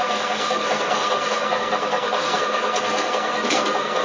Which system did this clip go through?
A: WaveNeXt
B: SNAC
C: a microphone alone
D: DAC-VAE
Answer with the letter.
B